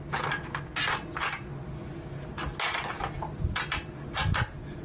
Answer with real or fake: real